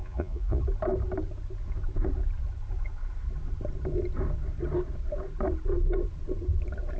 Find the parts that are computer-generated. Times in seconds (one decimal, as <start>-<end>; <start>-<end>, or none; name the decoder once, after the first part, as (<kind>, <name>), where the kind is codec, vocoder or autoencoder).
0.0-0.6 (vocoder, Vocos)